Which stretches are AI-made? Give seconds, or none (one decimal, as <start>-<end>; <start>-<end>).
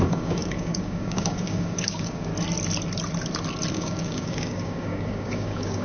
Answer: 0.0-2.3; 3.7-5.8